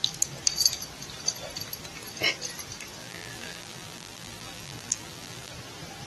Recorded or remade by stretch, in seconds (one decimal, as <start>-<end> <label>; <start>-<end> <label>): 0.0-3.0 recorded; 3.0-5.5 remade; 5.5-6.1 recorded